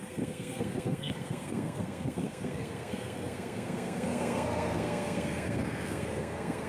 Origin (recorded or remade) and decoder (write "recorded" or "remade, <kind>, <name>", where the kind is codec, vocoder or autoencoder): remade, codec, SNAC